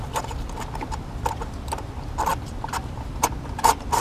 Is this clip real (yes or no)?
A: no